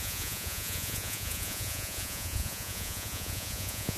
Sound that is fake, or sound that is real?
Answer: fake